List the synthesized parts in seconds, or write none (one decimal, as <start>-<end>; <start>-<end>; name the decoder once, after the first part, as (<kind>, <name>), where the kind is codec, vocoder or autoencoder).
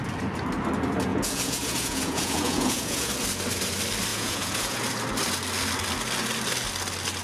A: 1.1-3.1 (vocoder, Vocos); 4.1-4.8